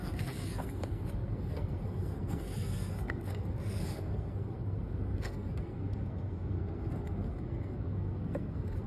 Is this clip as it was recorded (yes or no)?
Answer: no